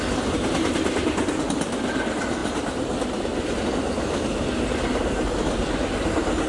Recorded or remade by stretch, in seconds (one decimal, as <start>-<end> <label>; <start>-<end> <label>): 0.0-6.5 recorded